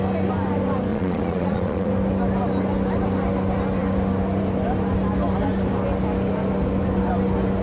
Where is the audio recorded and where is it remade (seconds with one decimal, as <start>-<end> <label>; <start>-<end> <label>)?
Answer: 0.0-0.9 recorded; 0.9-1.9 remade; 1.9-7.6 recorded